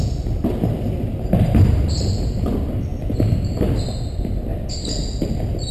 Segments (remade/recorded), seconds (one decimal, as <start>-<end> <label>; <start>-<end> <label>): 0.0-5.7 recorded